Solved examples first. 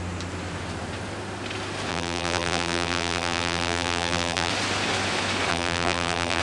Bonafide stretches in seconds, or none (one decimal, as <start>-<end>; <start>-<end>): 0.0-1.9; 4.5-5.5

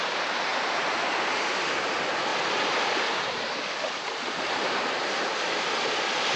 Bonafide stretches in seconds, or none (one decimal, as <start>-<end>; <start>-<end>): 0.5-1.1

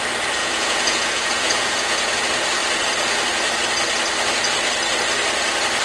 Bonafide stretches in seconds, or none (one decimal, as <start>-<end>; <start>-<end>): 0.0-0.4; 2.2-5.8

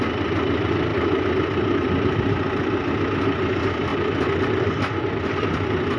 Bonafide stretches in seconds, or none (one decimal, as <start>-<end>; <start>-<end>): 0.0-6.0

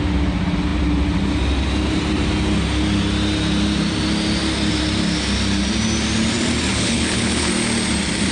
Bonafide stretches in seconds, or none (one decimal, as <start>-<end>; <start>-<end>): 0.0-6.7; 7.5-8.3

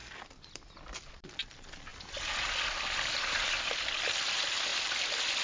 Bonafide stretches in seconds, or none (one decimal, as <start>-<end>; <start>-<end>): 0.0-5.4